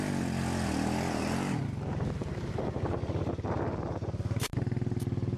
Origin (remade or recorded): recorded